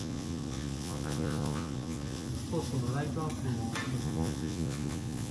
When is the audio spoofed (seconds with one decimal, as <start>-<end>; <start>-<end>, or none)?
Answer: 0.0-2.3; 4.0-5.3